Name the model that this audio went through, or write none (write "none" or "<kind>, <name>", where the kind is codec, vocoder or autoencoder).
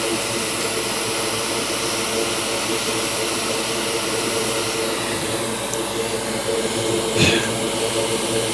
none